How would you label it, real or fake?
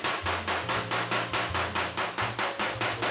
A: real